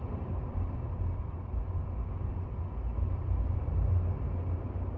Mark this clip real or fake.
real